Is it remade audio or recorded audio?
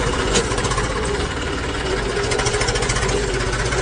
remade